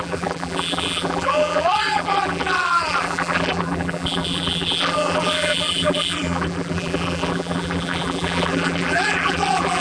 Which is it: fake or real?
fake